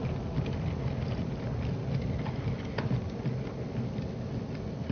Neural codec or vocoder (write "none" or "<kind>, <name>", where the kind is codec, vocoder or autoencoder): none